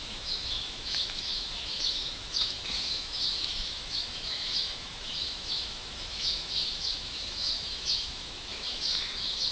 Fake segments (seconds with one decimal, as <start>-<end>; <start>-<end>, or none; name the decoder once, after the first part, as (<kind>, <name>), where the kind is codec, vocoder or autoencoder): 0.0-9.5 (autoencoder, DAC-VAE)